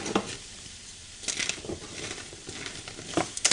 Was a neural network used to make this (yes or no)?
no